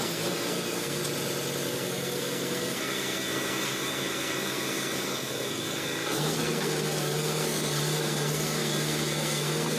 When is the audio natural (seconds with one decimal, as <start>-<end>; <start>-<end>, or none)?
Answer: 1.0-1.7